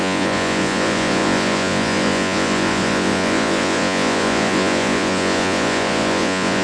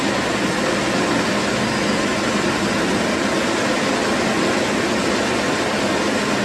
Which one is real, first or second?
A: second